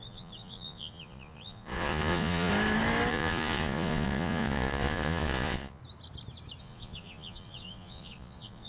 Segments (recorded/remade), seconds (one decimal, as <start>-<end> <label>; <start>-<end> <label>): 0.0-2.5 remade; 2.5-3.1 recorded; 3.1-5.8 remade; 5.8-6.6 recorded; 6.6-8.7 remade